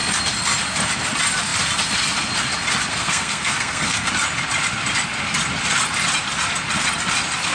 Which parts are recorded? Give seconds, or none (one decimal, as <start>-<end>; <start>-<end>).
0.0-2.9; 4.1-7.5